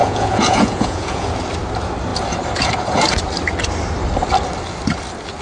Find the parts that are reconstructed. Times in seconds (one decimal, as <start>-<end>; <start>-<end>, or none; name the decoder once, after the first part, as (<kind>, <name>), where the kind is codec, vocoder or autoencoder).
0.0-1.3 (vocoder, Vocos)